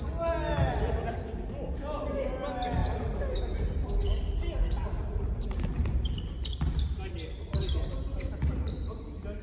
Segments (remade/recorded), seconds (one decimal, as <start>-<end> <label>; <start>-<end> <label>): 0.0-9.4 recorded